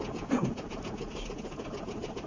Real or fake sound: fake